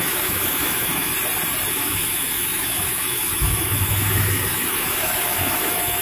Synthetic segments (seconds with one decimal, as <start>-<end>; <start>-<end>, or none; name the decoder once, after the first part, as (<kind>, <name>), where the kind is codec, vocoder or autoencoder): 0.0-1.1 (autoencoder, DAC-VAE); 1.7-6.0